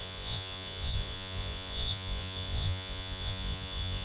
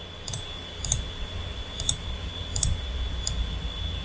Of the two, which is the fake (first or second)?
first